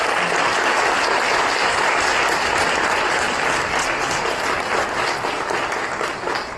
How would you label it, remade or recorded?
recorded